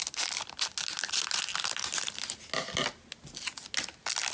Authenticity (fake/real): real